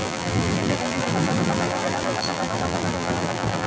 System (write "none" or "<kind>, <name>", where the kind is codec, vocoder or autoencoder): vocoder, BigVGAN v2